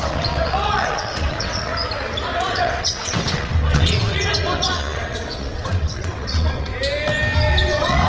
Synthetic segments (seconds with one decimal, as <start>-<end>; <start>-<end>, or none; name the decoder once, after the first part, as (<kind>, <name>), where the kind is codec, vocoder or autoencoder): 0.0-1.7 (vocoder, WaveNeXt); 2.5-6.7; 7.5-8.1